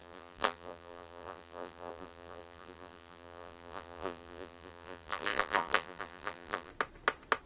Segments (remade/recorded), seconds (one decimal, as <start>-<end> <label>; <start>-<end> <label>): 0.0-6.7 remade; 6.7-7.5 recorded